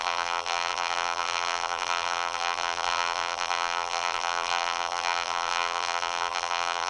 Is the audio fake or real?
fake